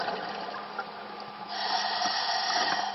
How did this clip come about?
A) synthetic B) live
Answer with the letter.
B